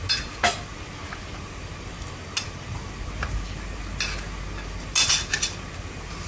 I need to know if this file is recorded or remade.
recorded